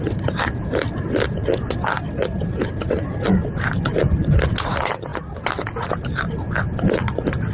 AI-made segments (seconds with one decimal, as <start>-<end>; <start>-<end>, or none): none